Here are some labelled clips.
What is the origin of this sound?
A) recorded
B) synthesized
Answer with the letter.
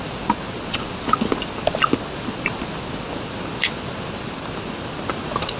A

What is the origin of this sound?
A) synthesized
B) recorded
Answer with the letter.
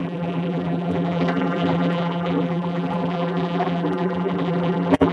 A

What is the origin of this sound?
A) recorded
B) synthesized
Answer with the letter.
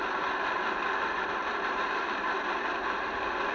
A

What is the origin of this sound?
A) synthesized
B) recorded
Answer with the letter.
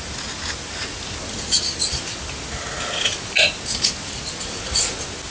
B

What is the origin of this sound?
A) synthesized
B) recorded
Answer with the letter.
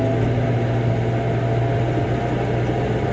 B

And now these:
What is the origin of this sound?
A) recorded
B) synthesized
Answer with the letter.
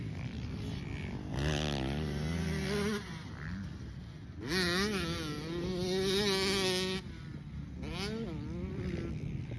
A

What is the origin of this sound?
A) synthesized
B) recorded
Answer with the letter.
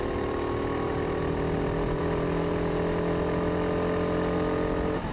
B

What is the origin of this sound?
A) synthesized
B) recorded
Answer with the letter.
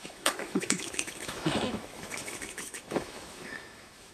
A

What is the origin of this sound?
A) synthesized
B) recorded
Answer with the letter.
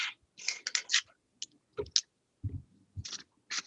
B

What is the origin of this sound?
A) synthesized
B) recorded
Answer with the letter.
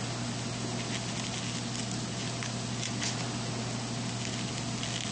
B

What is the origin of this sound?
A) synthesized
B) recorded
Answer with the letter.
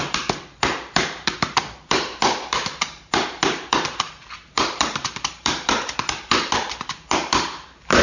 A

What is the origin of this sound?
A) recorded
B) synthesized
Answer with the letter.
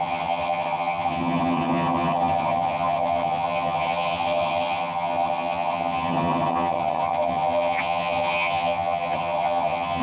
B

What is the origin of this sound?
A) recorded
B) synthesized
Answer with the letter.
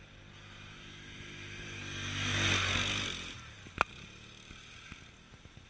A